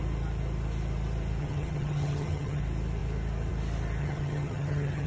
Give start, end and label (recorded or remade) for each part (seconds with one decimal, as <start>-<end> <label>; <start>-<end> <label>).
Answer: 0.0-1.4 recorded; 1.4-2.6 remade; 2.6-4.0 recorded; 4.0-5.1 remade